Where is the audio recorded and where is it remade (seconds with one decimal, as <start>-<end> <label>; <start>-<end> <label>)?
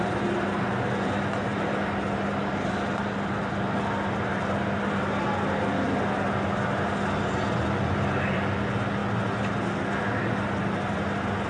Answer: 0.0-11.5 recorded